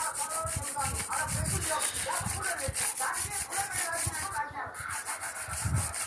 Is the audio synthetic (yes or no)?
no